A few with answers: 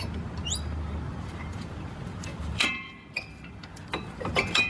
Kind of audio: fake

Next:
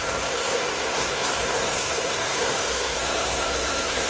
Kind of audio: fake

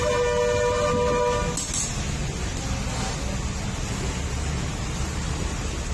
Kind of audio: real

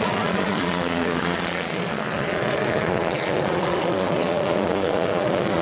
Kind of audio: fake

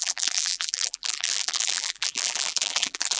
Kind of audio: fake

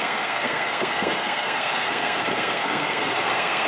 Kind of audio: fake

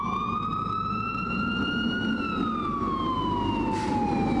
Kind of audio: real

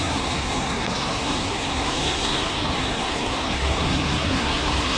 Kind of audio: fake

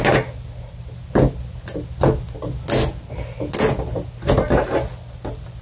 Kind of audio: real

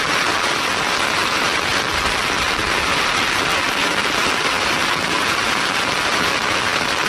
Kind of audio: real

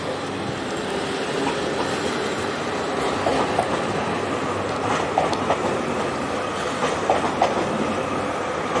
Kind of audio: real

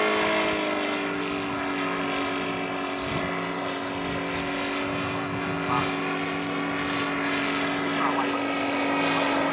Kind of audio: real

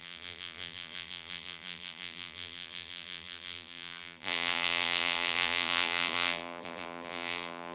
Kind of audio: fake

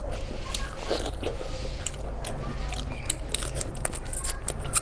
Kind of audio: real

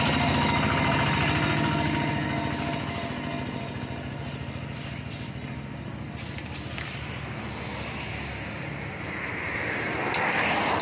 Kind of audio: real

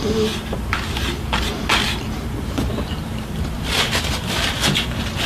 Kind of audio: real